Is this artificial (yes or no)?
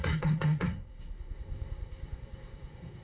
yes